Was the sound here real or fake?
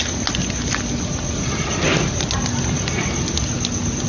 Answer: real